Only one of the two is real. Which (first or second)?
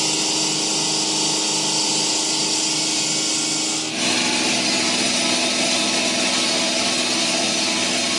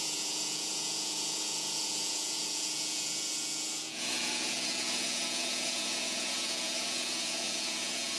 first